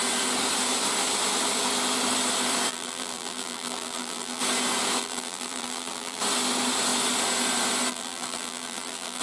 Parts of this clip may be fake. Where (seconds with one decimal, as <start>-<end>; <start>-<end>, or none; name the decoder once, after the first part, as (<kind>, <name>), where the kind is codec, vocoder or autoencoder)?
2.7-4.4 (vocoder, BigVGAN v2); 5.0-6.2; 7.9-9.2